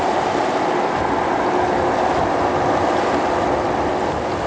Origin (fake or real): real